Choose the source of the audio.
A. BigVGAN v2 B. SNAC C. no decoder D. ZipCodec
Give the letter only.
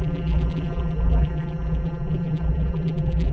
A